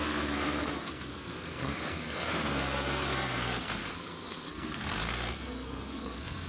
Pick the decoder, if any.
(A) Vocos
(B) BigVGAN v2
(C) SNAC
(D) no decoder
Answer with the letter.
C